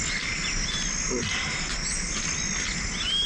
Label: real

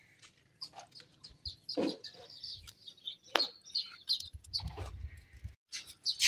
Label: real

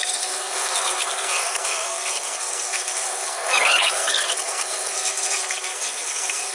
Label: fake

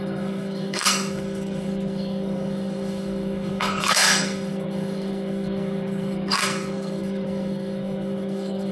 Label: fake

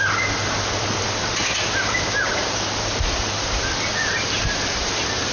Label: real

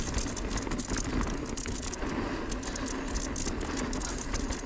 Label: real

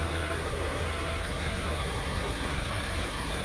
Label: fake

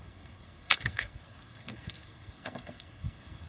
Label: fake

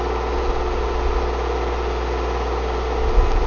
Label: real